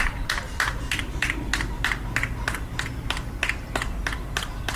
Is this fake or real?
real